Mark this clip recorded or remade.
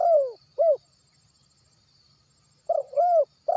recorded